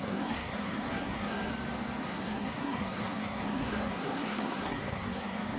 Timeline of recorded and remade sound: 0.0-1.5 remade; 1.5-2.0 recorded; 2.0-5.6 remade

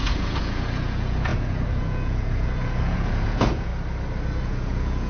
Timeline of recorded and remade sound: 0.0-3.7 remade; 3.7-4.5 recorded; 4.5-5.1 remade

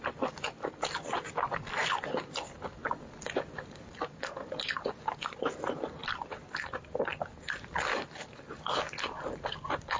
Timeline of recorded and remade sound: 0.0-10.0 recorded

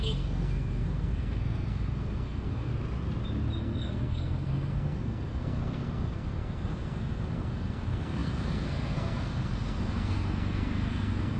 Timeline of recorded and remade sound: 0.0-2.7 remade; 2.7-3.6 recorded; 3.6-11.4 remade

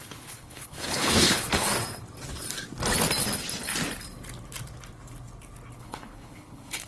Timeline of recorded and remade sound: 0.0-1.7 remade; 1.7-5.8 recorded; 5.8-6.9 remade